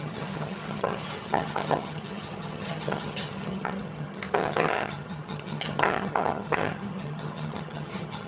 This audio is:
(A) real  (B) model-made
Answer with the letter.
B